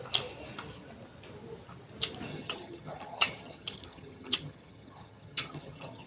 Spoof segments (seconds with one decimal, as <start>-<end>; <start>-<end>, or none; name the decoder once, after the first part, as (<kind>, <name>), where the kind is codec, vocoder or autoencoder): 2.3-6.1 (vocoder, HiFi-GAN)